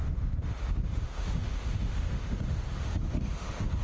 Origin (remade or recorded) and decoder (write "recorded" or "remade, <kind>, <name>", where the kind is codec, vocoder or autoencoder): remade, autoencoder, DAC-VAE